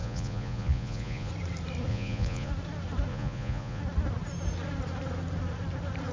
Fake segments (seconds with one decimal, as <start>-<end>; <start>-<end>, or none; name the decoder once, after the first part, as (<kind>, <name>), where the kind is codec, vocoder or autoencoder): 0.0-1.3 (vocoder, Vocos); 1.9-2.5; 3.1-3.8

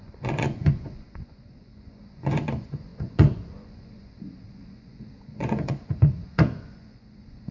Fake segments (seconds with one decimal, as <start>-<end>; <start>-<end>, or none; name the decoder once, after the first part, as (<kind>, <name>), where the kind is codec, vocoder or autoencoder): 0.0-7.5 (vocoder, Vocos)

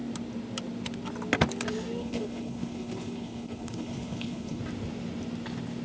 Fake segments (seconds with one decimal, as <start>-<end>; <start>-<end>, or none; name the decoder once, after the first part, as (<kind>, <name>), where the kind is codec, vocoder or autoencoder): 2.0-4.6 (codec, HILCodec)

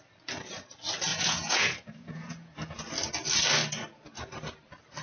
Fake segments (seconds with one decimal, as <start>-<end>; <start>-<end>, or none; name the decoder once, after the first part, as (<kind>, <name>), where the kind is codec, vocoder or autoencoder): 1.1-2.8 (vocoder, Vocos)

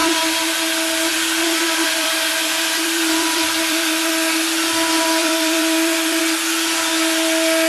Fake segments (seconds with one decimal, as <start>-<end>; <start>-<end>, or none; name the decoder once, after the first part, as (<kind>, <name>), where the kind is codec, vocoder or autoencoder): 0.0-4.1 (vocoder, BigVGAN v2); 5.2-6.2

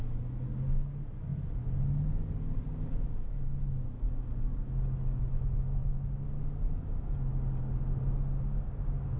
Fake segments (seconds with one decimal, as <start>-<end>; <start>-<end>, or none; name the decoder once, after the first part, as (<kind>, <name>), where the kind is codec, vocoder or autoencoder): none

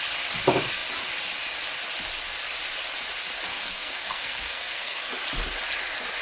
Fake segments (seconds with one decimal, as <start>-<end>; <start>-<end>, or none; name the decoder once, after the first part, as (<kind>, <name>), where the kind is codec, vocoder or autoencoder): 3.5-5.1 (codec, SNAC)

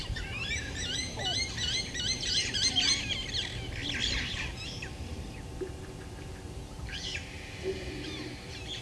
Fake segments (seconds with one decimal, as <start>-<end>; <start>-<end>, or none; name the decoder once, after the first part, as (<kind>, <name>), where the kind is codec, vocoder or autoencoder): 0.0-3.2 (vocoder, BigVGAN v2); 4.2-8.8